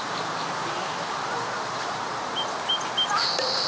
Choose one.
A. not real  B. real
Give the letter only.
A